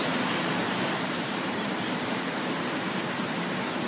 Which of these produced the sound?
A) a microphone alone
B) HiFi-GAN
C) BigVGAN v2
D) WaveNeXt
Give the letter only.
C